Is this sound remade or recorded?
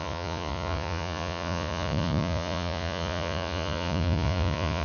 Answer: remade